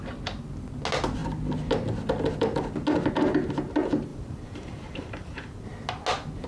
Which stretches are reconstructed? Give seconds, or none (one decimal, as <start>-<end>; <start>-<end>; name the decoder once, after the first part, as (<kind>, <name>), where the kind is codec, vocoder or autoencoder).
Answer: 4.1-5.6 (vocoder, BigVGAN v2)